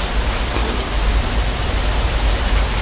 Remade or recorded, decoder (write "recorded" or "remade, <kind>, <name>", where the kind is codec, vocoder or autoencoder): recorded